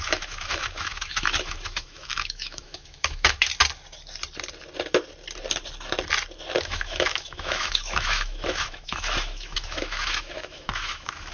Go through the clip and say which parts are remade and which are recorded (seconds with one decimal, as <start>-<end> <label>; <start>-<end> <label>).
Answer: 0.0-3.5 remade; 3.5-6.6 recorded; 6.6-11.3 remade